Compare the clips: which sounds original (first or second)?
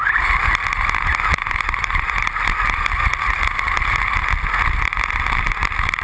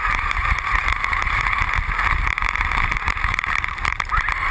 first